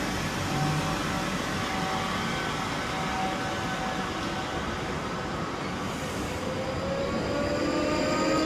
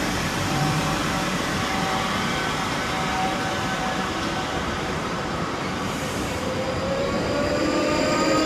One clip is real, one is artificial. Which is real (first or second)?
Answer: first